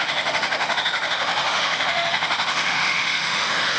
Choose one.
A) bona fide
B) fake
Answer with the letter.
B